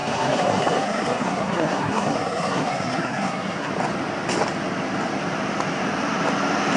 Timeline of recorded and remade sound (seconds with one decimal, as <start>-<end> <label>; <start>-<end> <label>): 0.0-3.7 remade; 3.7-6.8 recorded